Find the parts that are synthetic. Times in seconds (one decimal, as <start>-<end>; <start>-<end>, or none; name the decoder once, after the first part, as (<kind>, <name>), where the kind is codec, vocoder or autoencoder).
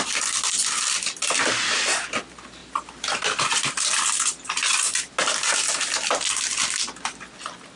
none